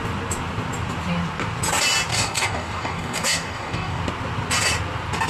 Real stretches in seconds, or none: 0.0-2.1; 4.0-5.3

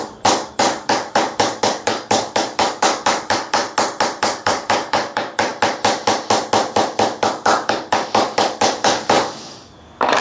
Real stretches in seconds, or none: 3.6-4.2; 5.5-7.3